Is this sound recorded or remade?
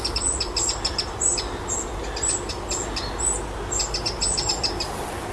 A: recorded